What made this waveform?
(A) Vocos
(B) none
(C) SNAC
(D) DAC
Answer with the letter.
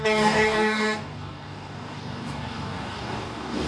D